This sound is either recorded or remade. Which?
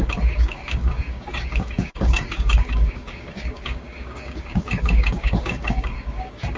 remade